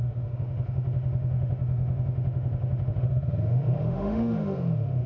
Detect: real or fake fake